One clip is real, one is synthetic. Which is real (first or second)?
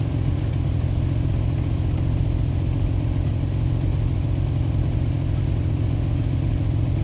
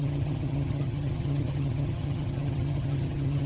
first